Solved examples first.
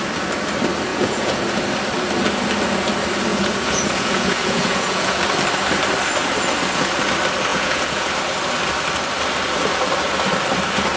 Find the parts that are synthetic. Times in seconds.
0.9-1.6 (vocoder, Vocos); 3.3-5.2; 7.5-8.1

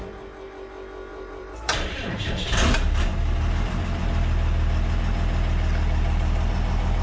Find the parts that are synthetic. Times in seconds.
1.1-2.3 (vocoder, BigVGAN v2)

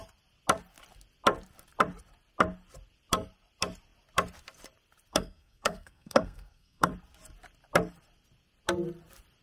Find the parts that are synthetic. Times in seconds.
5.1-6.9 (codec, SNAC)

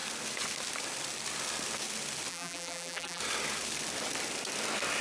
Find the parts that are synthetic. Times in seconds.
2.3-3.2 (vocoder, BigVGAN v2)

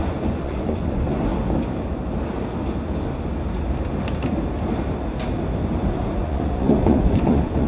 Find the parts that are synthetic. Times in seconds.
0.0-1.3 (vocoder, Vocos); 5.9-7.7

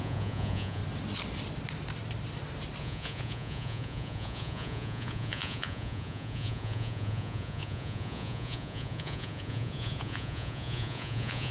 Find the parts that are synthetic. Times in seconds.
0.0-0.8 (vocoder, Vocos); 2.8-11.5